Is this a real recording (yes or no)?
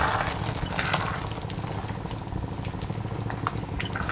yes